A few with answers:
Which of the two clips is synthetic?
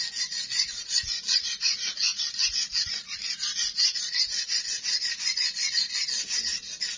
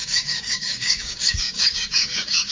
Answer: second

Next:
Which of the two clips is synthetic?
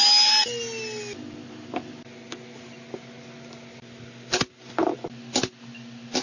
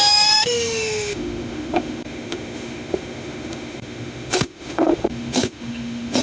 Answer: second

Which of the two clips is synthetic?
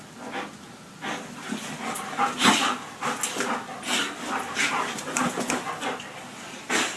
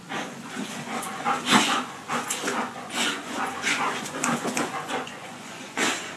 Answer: second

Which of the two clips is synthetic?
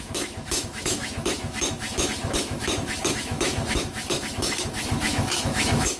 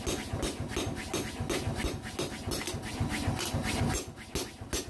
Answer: first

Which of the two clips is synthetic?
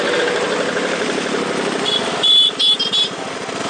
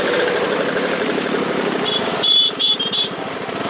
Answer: second